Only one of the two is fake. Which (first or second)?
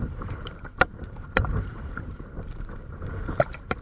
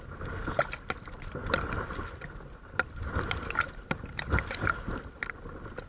first